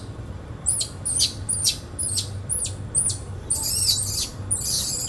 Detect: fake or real real